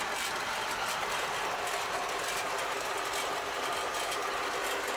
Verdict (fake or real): real